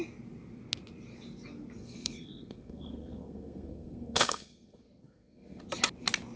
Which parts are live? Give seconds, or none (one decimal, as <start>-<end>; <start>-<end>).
0.0-1.8; 5.6-6.4